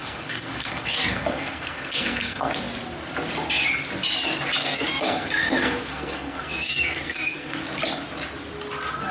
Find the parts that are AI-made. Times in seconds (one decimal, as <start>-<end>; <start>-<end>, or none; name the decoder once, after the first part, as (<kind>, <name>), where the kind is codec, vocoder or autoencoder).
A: 0.0-2.5 (codec, SNAC); 4.6-7.6